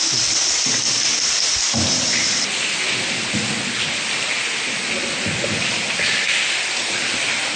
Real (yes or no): yes